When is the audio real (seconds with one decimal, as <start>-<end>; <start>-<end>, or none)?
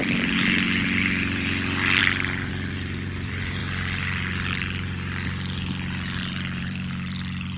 2.0-2.5